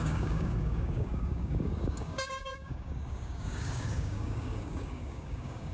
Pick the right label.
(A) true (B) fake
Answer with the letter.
B